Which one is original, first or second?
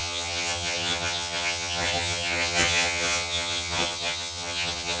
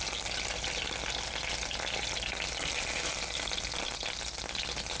second